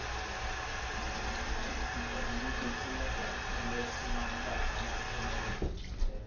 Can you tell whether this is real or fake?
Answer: real